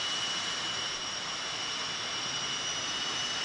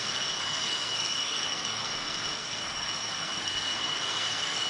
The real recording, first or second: first